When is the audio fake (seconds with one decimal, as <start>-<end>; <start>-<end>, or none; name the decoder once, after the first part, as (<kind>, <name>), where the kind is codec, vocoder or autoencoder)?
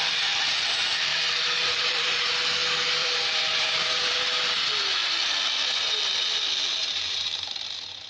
1.1-2.3 (vocoder, BigVGAN v2); 3.0-4.2; 6.8-7.5